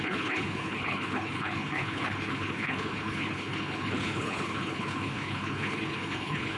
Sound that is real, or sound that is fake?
fake